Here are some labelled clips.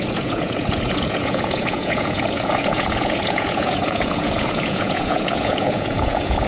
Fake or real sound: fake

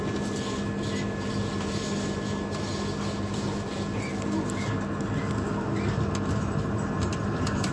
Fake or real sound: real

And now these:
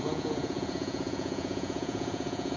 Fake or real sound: fake